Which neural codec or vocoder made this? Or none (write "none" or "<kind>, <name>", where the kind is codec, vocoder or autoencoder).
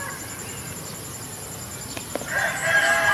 none